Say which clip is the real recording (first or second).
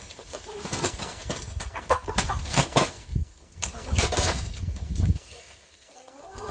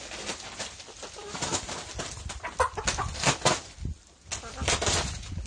second